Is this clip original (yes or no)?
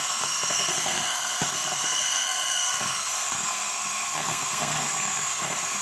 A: no